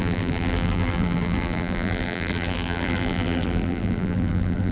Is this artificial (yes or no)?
yes